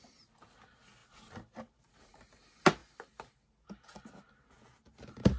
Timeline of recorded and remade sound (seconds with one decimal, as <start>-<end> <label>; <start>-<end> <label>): 0.0-5.4 recorded